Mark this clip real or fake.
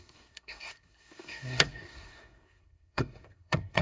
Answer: fake